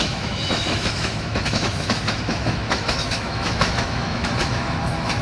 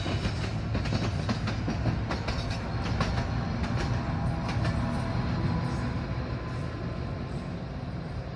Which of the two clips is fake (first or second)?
first